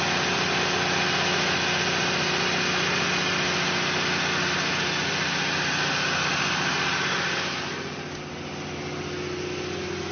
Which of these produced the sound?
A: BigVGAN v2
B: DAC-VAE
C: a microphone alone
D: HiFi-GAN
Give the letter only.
C